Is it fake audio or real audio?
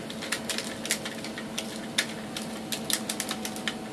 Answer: real